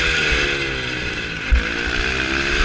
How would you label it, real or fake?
real